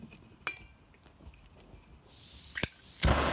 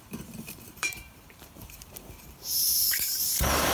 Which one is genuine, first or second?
first